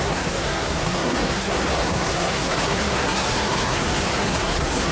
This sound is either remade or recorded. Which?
remade